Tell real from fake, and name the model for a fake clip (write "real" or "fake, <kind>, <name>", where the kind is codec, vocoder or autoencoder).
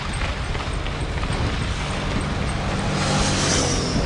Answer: real